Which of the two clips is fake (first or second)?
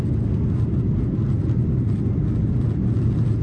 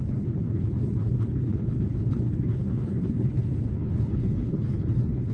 second